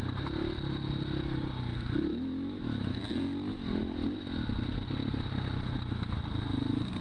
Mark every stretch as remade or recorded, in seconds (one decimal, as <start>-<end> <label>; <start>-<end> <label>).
0.0-2.1 recorded; 2.1-3.1 remade; 3.1-7.0 recorded